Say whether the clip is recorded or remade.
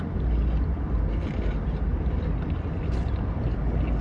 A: recorded